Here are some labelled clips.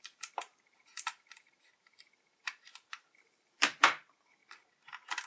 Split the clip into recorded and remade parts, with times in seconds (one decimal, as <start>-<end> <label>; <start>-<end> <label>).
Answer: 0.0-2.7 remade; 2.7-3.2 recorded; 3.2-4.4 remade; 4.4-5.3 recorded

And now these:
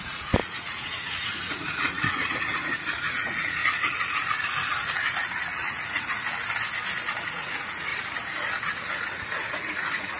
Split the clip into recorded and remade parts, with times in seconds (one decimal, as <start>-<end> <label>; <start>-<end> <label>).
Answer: 0.0-3.6 remade; 3.6-4.7 recorded; 4.7-6.2 remade; 6.2-7.2 recorded; 7.2-7.9 remade; 7.9-8.9 recorded; 8.9-10.2 remade

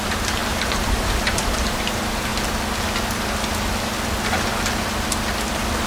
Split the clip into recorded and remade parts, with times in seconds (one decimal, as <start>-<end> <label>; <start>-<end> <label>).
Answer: 0.0-2.3 remade; 2.3-5.9 recorded

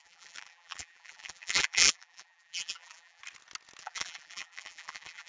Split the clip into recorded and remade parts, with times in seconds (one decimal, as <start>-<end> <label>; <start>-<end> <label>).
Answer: 0.0-3.2 remade; 3.2-3.8 recorded; 3.8-5.3 remade